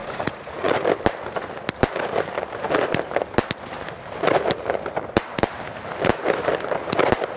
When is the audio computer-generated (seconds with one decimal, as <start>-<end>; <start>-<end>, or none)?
0.0-0.7